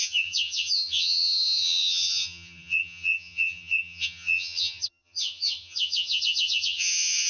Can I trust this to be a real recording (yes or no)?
no